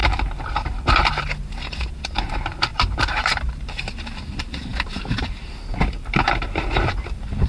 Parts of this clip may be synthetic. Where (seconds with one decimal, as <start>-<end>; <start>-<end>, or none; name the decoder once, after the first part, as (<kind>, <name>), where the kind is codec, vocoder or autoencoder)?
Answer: 0.0-7.5 (vocoder, BigVGAN v2)